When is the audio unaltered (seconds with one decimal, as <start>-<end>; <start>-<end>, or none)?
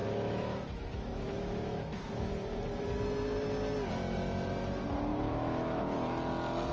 2.3-5.1; 5.8-6.7